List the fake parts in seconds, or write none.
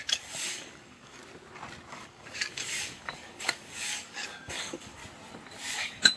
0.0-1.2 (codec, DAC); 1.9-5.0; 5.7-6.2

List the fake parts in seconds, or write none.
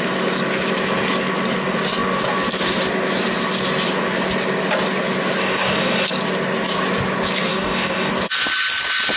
5.4-6.1 (codec, DAC); 7.5-8.1